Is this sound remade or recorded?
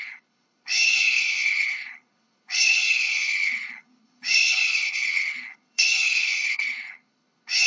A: remade